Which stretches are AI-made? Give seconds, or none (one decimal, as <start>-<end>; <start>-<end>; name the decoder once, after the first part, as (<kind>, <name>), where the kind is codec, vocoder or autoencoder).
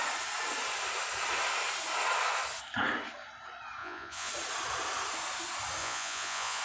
3.8-4.3 (vocoder, Vocos); 5.8-6.6